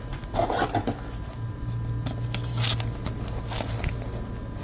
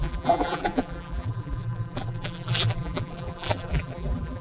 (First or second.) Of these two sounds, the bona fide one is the first